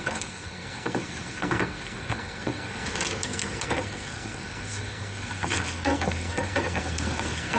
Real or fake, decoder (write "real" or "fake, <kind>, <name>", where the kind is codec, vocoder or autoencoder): fake, codec, SNAC